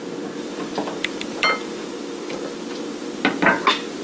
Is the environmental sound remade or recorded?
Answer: recorded